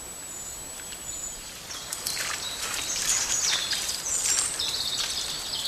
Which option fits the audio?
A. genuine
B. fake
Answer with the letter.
B